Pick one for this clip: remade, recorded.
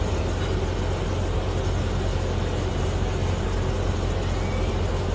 recorded